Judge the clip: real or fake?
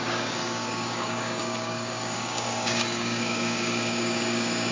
fake